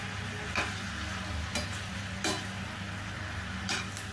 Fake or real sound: real